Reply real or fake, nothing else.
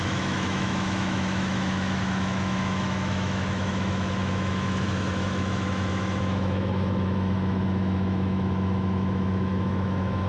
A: fake